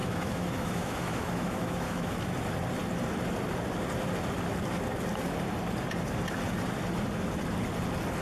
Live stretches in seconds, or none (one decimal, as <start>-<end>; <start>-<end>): 2.3-8.2